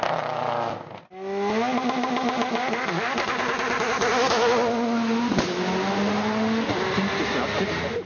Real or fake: real